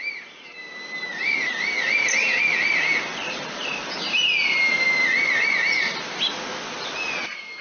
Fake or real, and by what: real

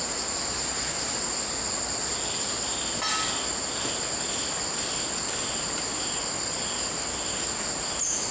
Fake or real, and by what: real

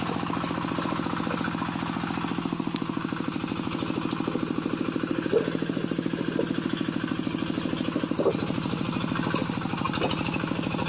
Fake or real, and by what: real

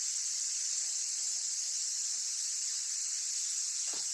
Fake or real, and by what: real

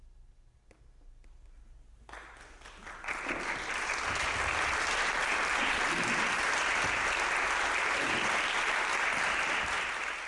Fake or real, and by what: real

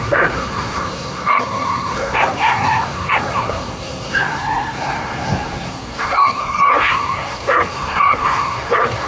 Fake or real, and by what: fake, codec, SNAC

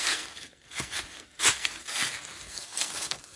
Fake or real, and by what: fake, codec, SNAC